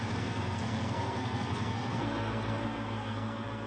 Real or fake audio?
fake